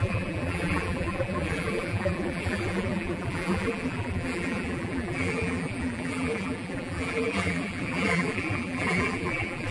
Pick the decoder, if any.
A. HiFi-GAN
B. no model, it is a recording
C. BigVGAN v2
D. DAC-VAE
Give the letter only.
C